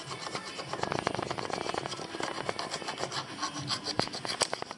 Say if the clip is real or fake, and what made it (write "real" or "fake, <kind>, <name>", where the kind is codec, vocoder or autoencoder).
real